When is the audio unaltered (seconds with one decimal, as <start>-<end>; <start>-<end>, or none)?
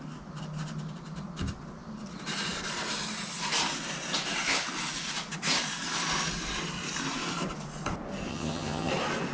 0.0-8.3; 8.9-9.3